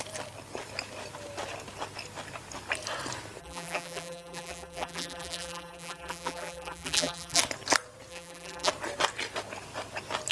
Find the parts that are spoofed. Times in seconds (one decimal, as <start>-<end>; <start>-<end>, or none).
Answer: 3.4-7.4; 8.1-8.7